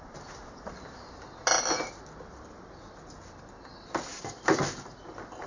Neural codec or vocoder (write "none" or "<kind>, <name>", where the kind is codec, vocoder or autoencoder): none